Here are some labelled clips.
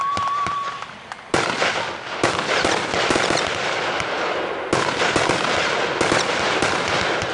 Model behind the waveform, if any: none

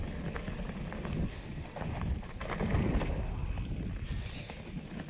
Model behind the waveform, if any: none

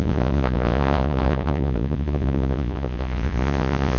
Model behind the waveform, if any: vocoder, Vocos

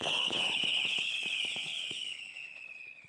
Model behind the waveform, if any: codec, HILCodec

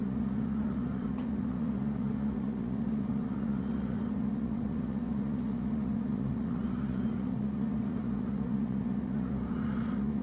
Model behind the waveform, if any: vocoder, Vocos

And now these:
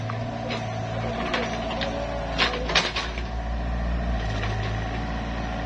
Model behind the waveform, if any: none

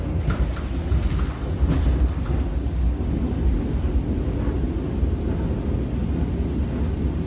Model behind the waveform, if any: none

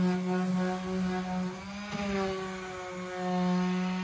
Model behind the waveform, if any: none